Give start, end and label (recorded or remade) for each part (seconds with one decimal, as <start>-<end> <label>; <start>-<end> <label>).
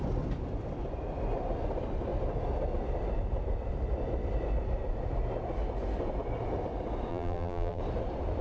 0.0-7.1 recorded; 7.1-7.8 remade; 7.8-8.4 recorded